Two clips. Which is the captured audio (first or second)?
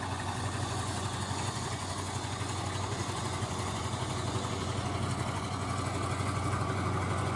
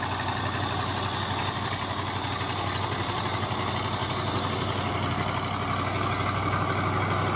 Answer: second